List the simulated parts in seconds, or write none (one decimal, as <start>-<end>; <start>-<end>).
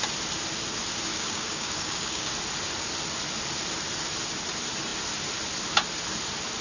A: 1.1-2.3